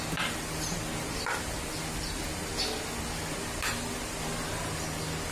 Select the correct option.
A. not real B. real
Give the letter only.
B